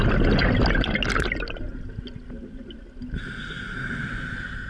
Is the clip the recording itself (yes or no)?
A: yes